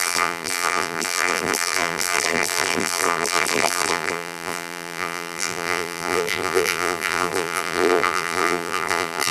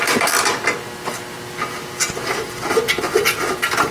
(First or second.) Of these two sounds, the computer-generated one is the first